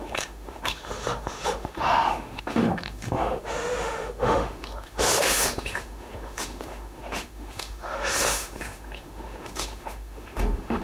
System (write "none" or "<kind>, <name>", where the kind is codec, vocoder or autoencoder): autoencoder, DAC-VAE